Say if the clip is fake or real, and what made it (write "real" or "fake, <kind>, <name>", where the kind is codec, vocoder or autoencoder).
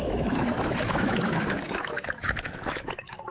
fake, autoencoder, DAC-VAE